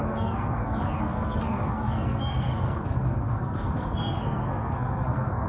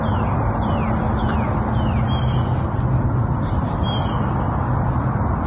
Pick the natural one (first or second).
second